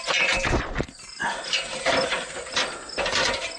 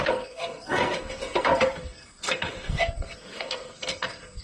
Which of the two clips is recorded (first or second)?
first